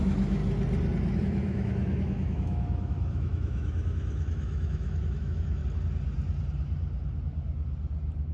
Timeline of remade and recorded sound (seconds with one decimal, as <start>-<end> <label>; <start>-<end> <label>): 0.0-0.4 remade; 0.4-1.2 recorded; 1.2-5.6 remade; 5.6-8.3 recorded